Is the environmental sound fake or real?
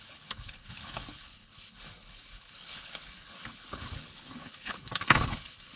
fake